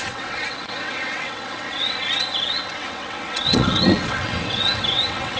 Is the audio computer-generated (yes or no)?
yes